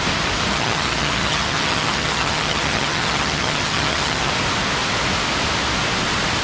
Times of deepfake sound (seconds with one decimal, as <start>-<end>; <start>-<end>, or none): 0.5-4.3